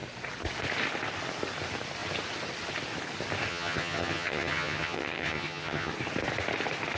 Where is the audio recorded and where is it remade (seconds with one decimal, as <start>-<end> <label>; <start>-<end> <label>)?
0.0-3.5 recorded; 3.5-5.9 remade; 5.9-7.0 recorded